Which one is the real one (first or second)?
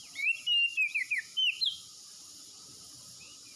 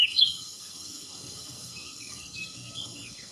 first